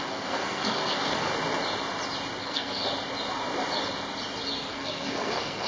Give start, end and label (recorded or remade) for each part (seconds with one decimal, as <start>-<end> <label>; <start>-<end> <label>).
0.0-1.3 remade; 1.3-2.4 recorded; 2.4-2.8 remade; 2.8-4.7 recorded; 4.7-5.7 remade

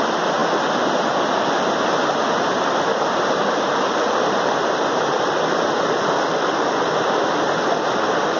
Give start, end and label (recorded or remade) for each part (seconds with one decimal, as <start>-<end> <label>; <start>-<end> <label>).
0.0-8.4 recorded

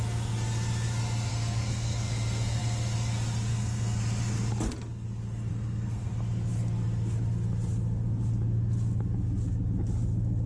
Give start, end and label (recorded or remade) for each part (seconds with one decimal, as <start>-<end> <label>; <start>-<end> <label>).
0.0-1.3 recorded; 1.3-2.6 remade; 2.6-3.5 recorded; 3.5-4.0 remade; 4.0-5.5 recorded; 5.5-6.1 remade; 6.1-10.5 recorded

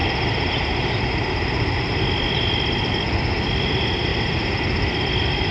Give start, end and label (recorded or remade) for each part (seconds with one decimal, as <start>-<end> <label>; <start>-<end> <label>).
0.0-5.5 recorded

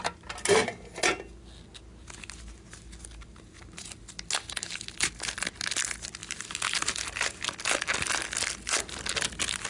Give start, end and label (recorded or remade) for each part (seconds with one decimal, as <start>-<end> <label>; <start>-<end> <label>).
0.0-9.7 recorded